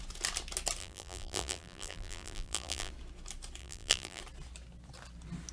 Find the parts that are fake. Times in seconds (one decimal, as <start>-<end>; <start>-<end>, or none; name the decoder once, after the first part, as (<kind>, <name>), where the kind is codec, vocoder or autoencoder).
0.8-2.9 (vocoder, BigVGAN v2); 3.6-4.2